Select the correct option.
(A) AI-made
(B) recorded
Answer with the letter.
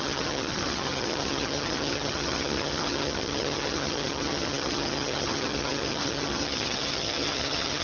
A